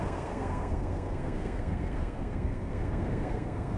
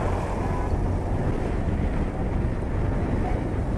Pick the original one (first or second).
second